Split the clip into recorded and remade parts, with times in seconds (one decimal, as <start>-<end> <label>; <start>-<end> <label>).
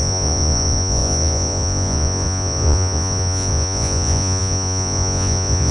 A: 0.0-5.7 remade